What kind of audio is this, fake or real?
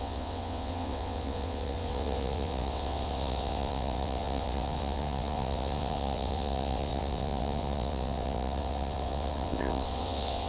fake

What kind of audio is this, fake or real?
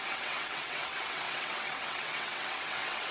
fake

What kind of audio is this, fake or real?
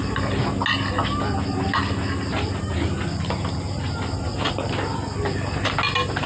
real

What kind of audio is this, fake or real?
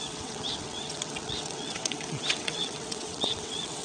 fake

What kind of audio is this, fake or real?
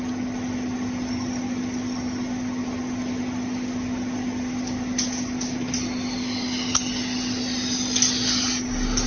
real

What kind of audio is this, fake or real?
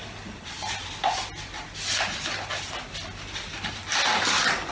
real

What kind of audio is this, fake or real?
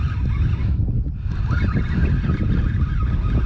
real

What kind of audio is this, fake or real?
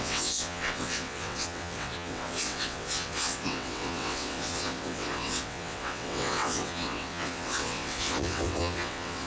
fake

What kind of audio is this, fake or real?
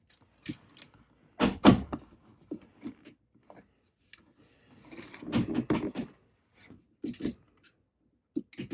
real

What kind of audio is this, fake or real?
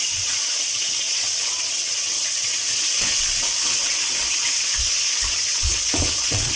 fake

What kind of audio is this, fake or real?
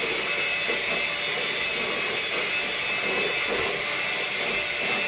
real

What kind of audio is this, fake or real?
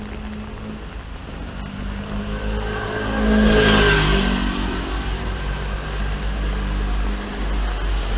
real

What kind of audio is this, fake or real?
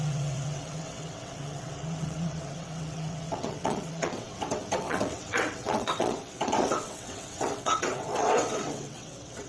fake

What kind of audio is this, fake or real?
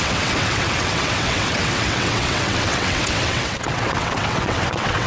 fake